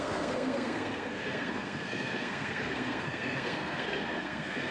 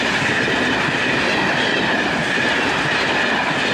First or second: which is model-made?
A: first